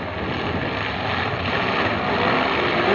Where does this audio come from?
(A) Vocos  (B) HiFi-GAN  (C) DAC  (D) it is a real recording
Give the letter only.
D